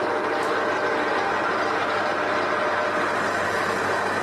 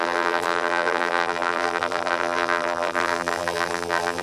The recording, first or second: first